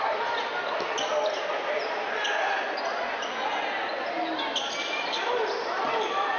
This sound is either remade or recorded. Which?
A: recorded